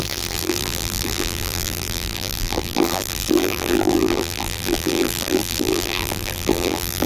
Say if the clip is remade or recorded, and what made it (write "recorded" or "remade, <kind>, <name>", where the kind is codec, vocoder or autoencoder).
remade, vocoder, BigVGAN v2